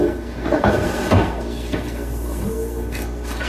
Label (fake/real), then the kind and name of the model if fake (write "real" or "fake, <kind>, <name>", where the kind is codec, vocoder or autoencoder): fake, codec, SNAC